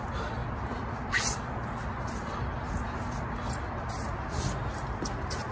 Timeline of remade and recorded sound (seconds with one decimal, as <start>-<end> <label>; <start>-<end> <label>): 0.0-0.4 recorded; 0.4-2.7 remade; 2.7-5.5 recorded